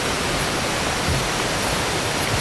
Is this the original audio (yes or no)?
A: yes